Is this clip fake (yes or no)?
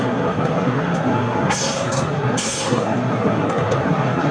yes